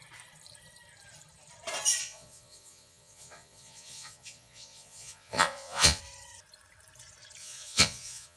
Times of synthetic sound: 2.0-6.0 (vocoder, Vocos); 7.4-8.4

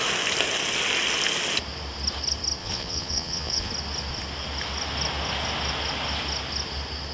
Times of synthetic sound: 2.6-3.7 (vocoder, Vocos)

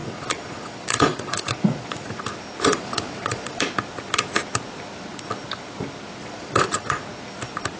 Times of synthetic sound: 0.0-2.2 (vocoder, Vocos); 2.6-3.6; 6.2-7.0

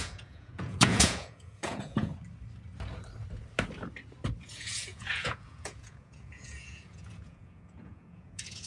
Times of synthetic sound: 0.0-2.1 (vocoder, Vocos); 4.4-8.7

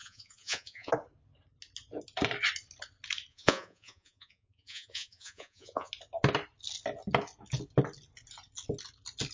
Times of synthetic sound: 0.0-0.9 (vocoder, Vocos); 3.3-5.9